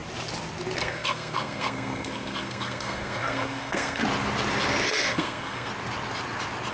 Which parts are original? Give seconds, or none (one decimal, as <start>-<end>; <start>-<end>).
0.0-0.8; 4.0-4.9; 5.7-6.7